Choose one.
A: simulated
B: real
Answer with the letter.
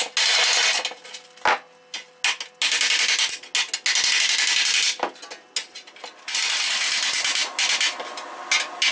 B